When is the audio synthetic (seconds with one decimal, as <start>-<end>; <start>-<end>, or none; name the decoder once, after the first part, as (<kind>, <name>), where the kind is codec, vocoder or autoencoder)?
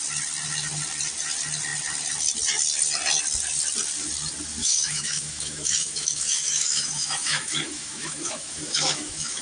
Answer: 4.6-9.4 (autoencoder, DAC-VAE)